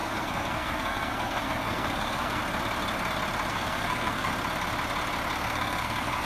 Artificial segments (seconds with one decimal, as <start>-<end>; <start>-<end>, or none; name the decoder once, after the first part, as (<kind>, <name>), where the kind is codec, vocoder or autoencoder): 0.0-2.4 (codec, SNAC); 3.5-4.3; 5.4-6.3